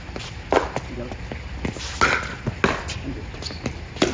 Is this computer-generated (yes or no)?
no